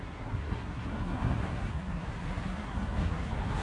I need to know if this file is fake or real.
fake